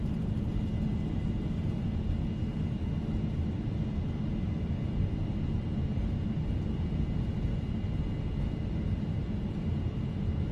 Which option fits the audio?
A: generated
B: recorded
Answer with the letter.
B